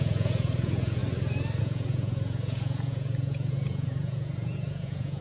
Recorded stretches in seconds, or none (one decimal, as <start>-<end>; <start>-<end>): 1.0-1.6